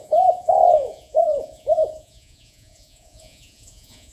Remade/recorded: remade